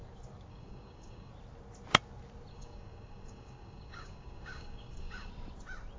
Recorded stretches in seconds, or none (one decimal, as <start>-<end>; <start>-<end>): 0.0-0.5; 1.3-2.5; 5.3-6.0